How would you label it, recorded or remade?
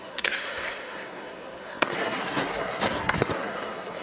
remade